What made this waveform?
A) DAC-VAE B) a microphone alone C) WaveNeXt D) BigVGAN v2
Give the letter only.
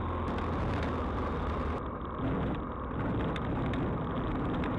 B